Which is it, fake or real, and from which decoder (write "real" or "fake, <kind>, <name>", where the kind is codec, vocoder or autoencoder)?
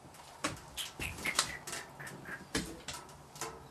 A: real